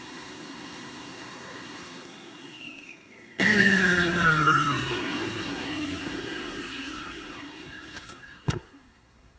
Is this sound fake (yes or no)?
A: yes